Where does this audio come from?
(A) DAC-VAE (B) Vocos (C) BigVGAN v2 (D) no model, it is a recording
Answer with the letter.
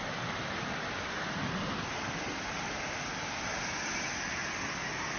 D